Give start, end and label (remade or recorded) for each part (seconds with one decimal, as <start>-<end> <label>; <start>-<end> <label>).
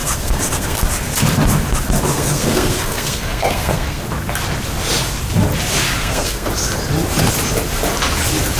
0.0-0.8 remade; 0.8-2.1 recorded; 2.1-4.0 remade; 4.0-6.0 recorded; 6.0-6.5 remade; 6.5-8.6 recorded